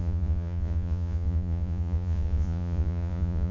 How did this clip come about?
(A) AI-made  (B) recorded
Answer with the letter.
A